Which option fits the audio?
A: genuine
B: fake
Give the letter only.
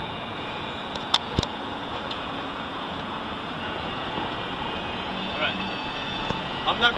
B